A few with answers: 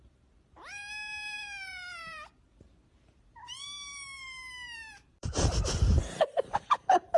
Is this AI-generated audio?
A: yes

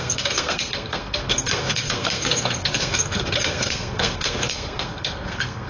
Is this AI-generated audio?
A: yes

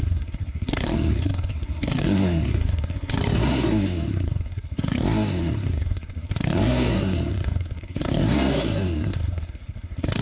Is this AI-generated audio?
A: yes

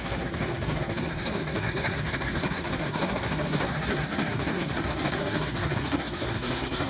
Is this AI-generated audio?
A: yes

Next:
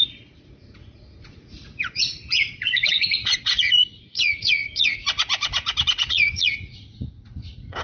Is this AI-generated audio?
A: yes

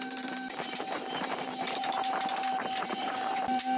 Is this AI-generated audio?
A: yes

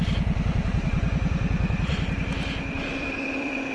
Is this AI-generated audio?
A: yes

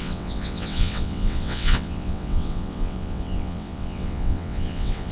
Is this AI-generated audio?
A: yes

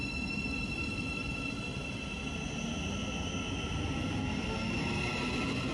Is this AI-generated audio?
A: no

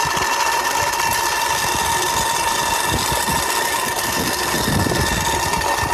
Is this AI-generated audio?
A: no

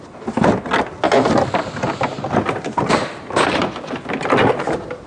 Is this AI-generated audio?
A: no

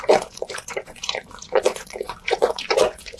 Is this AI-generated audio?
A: yes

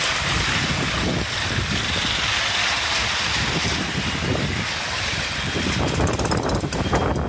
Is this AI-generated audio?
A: no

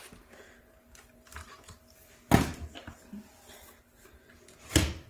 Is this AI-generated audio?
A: no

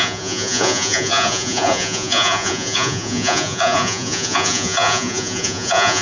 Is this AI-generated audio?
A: yes